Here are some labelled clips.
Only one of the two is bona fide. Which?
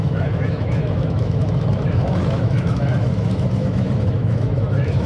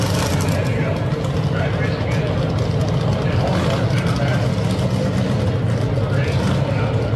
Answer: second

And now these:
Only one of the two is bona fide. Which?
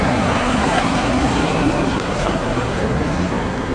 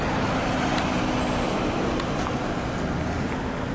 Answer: second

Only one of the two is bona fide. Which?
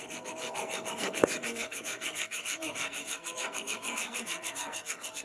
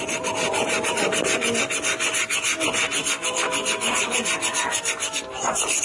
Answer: second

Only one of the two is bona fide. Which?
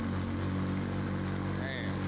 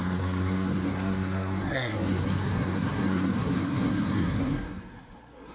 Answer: first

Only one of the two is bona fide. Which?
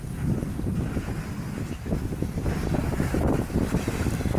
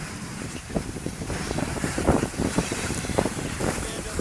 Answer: first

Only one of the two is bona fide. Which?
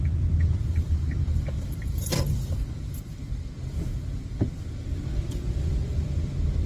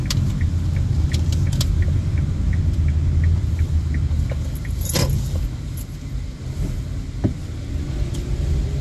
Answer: second